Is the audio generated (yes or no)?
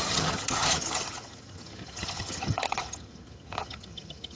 yes